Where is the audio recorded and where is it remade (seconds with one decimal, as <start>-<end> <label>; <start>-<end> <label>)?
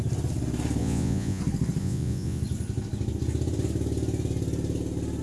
0.0-0.8 recorded; 0.8-1.4 remade; 1.4-1.8 recorded; 1.8-2.4 remade; 2.4-5.2 recorded